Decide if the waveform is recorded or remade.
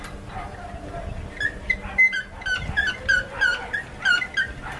recorded